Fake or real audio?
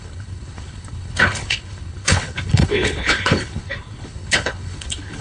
fake